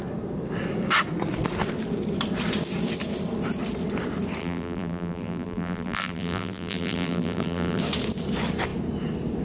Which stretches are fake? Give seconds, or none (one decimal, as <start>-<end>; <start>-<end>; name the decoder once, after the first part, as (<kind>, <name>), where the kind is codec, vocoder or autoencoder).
4.4-7.8 (vocoder, BigVGAN v2)